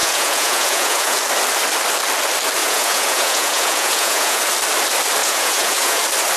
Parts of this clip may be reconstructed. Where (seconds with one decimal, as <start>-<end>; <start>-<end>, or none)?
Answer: 0.0-1.2; 2.6-4.4; 5.2-6.0